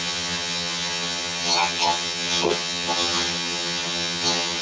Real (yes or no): no